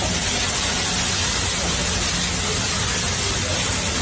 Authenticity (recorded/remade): recorded